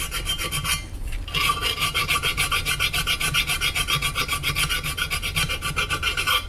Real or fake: real